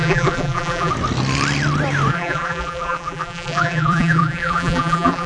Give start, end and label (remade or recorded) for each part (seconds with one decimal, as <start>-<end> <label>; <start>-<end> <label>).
0.0-0.9 remade; 0.9-2.1 recorded; 2.1-5.3 remade

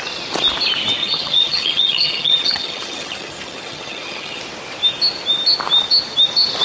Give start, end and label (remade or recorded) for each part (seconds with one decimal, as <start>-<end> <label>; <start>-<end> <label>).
0.0-1.0 recorded; 1.0-4.4 remade; 4.4-6.6 recorded

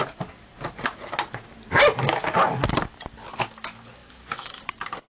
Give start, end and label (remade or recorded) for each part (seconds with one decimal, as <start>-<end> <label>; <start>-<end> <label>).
0.0-4.0 recorded; 4.0-4.6 remade; 4.6-5.2 recorded

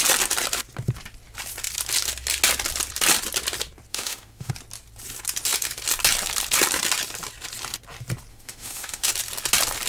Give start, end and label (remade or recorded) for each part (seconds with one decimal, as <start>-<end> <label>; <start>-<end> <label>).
0.0-3.9 recorded; 3.9-4.5 remade; 4.5-8.3 recorded; 8.3-9.1 remade; 9.1-9.9 recorded

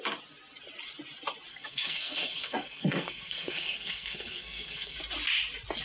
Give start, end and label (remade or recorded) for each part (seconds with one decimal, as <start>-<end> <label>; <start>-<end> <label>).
0.0-1.5 recorded; 1.5-5.0 remade; 5.0-5.8 recorded

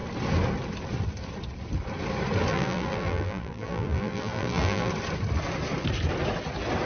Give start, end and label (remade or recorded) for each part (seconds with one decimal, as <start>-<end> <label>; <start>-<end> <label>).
0.0-2.5 recorded; 2.5-4.9 remade; 4.9-6.8 recorded

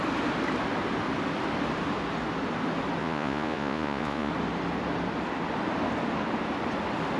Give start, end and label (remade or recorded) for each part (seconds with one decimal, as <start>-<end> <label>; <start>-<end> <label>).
0.0-3.0 recorded; 3.0-4.3 remade; 4.3-7.2 recorded